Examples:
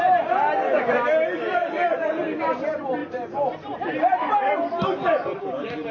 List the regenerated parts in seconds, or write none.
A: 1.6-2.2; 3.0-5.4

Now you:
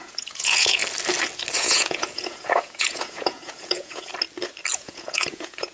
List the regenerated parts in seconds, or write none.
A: 0.0-0.8; 1.6-4.1; 4.7-5.7

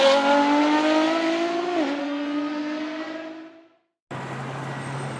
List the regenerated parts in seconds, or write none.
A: 2.0-3.0

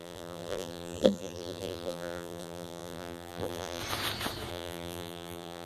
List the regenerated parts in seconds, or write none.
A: 0.0-3.8; 4.5-5.6

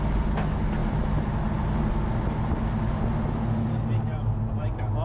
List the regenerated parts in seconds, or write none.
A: none